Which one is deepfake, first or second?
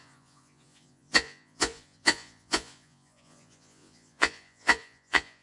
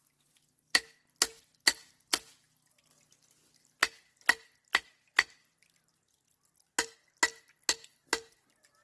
first